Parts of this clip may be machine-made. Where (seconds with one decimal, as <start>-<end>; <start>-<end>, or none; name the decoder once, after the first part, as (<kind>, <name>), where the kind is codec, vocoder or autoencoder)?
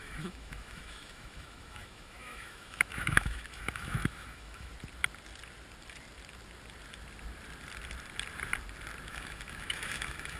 0.0-4.7 (autoencoder, DAC-VAE); 9.1-10.4